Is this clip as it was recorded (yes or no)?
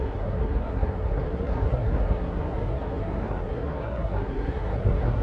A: no